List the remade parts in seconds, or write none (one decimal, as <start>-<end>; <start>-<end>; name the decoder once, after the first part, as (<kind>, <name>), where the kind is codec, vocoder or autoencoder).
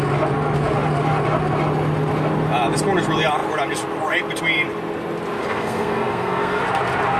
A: 5.4-6.6 (codec, SNAC)